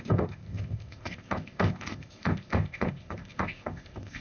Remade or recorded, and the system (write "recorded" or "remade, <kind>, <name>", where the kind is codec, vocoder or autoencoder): remade, codec, ZipCodec